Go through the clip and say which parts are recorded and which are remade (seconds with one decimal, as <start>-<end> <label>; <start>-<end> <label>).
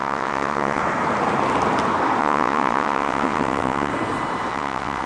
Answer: 0.0-0.8 remade; 0.8-2.2 recorded; 2.2-3.9 remade; 3.9-4.5 recorded; 4.5-5.1 remade